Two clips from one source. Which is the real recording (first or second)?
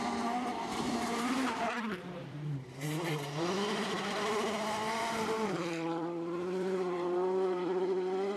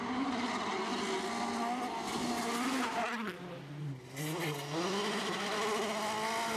second